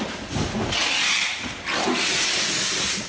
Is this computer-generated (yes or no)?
no